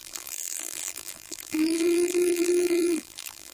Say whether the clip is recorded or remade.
remade